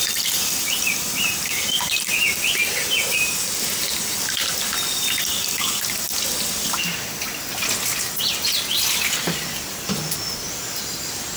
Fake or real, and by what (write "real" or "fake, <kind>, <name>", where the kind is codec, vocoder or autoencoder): real